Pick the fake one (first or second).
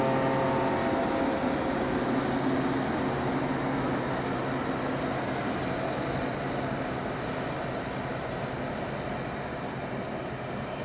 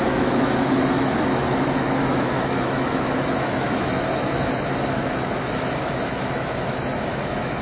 second